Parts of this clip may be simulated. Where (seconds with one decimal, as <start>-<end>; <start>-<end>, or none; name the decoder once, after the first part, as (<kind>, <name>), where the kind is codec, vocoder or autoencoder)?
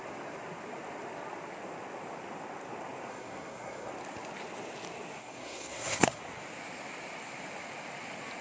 3.1-3.9 (codec, SNAC); 5.2-6.2